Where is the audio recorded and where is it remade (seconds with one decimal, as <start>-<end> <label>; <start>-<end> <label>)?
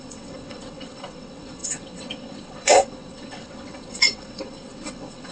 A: 0.0-5.3 remade